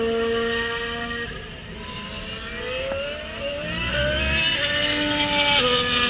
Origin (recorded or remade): recorded